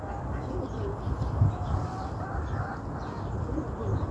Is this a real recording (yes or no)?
yes